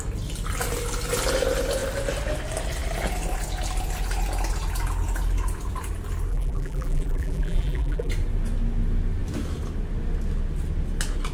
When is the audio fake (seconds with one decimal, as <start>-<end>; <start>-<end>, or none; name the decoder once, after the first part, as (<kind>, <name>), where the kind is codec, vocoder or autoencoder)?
6.3-8.1 (vocoder, BigVGAN v2)